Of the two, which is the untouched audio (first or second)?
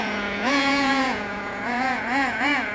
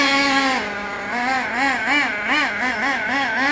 second